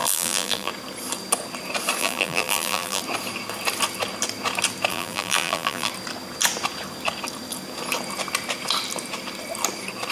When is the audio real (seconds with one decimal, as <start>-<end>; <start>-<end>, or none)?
0.7-2.0; 3.0-4.9; 5.9-10.1